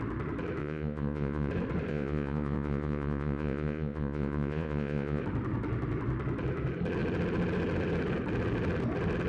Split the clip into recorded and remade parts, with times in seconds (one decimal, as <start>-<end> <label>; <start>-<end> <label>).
0.0-0.6 recorded; 0.6-1.5 remade; 1.5-1.9 recorded; 1.9-5.2 remade; 5.2-9.3 recorded